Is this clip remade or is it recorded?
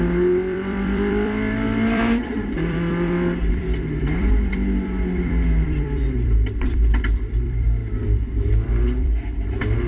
remade